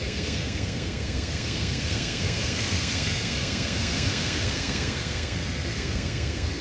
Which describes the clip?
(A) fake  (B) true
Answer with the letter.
A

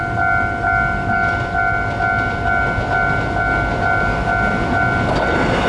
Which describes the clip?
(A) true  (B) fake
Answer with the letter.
A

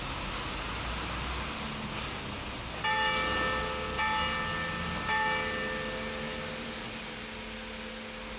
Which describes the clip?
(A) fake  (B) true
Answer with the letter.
B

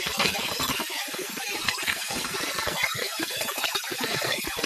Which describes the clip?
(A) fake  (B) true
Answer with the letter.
A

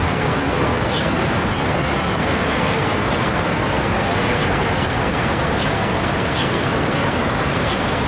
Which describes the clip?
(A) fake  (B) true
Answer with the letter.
A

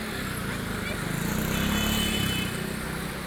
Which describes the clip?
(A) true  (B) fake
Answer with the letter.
A